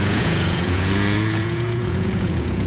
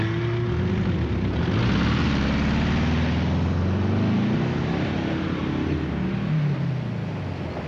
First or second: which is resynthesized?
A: first